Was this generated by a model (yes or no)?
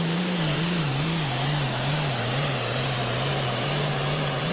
yes